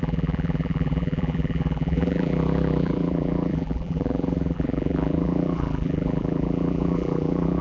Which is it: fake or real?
fake